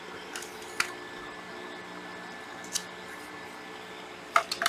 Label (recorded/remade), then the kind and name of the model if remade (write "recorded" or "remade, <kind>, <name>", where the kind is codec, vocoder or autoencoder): recorded